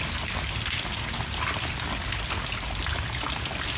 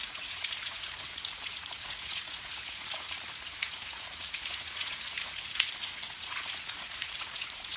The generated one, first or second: second